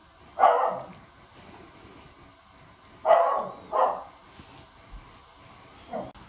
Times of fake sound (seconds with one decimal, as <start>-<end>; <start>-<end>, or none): none